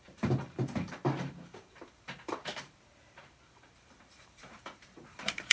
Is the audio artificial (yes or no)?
yes